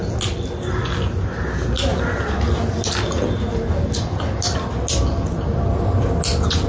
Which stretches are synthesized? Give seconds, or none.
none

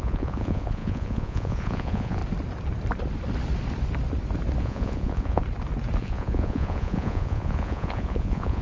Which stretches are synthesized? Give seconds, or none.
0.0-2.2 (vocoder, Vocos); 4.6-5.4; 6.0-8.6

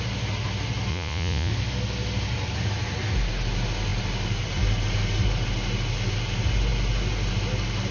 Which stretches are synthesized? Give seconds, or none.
0.9-1.5 (vocoder, Vocos)

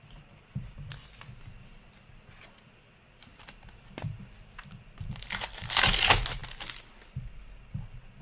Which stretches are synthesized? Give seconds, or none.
none

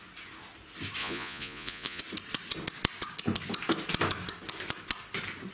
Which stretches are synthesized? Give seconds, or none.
1.0-2.0 (vocoder, Vocos)